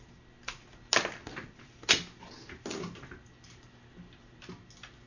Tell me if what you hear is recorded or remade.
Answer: recorded